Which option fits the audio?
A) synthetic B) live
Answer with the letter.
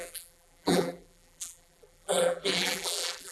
A